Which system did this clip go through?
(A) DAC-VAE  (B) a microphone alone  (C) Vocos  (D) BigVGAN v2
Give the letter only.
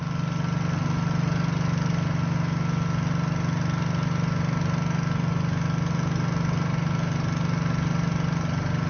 B